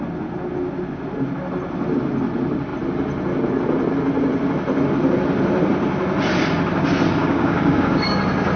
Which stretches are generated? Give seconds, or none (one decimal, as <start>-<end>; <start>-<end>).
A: 7.2-8.2